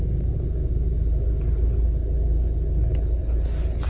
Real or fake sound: real